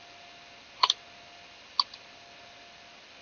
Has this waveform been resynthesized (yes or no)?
no